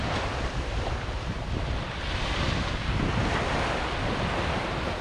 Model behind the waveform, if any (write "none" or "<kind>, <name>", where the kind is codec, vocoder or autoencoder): none